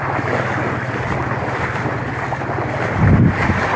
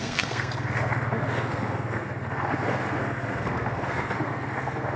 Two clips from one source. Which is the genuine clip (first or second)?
first